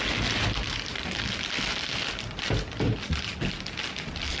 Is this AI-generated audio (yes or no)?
no